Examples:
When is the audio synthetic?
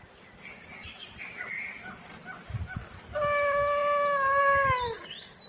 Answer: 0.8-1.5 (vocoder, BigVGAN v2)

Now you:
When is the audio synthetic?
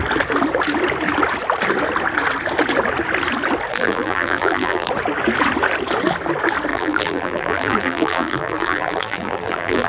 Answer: 3.7-4.9 (vocoder, BigVGAN v2); 6.7-9.9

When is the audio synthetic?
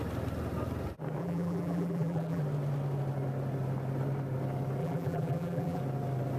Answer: 1.2-2.4 (vocoder, BigVGAN v2); 4.8-5.8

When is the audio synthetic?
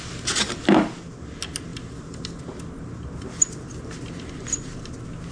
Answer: none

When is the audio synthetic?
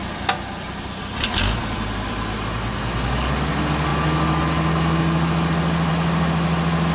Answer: none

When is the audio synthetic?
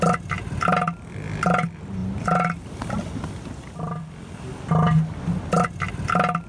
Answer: none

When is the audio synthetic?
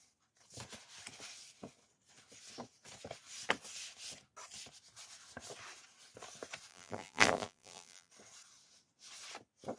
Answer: 6.7-8.1 (vocoder, BigVGAN v2)